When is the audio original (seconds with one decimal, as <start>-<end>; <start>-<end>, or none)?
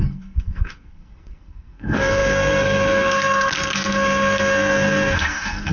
none